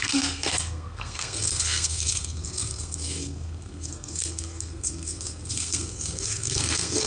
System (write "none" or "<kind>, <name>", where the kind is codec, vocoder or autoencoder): codec, SNAC